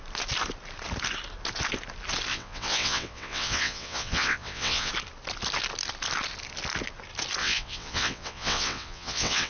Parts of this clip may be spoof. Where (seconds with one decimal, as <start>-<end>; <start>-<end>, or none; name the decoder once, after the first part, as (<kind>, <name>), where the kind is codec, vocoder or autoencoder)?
2.3-4.9 (vocoder, WaveNeXt); 7.4-9.5

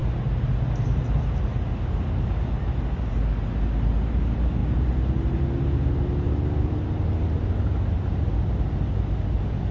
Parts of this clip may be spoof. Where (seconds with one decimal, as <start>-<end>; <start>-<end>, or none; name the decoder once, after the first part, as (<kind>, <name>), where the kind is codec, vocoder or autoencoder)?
none